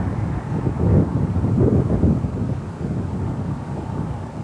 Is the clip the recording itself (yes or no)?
no